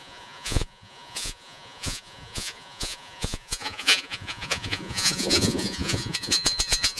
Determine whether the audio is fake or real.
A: fake